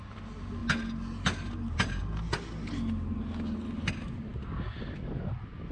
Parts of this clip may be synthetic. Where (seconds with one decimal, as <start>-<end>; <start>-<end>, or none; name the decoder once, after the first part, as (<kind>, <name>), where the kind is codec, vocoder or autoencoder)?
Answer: none